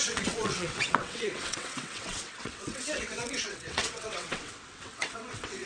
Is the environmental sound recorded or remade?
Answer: remade